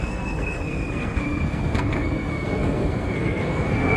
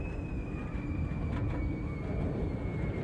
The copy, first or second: first